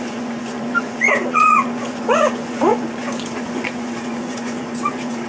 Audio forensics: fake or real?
fake